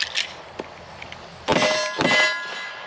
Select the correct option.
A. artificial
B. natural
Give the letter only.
B